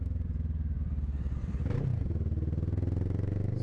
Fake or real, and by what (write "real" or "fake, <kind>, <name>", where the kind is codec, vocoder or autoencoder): real